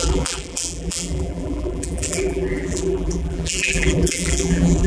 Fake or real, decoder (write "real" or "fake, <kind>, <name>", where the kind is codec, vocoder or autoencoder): fake, vocoder, BigVGAN v2